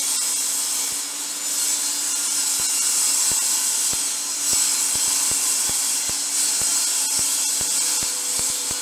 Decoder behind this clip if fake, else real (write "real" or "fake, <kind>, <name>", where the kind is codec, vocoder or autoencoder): real